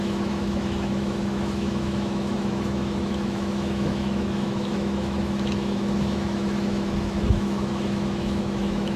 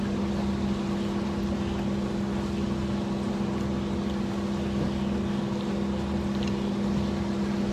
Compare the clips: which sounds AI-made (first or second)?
first